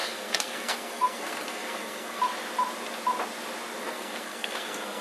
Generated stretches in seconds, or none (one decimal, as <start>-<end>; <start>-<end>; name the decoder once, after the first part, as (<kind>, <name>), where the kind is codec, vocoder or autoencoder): 0.0-2.2 (codec, SNAC); 3.8-5.0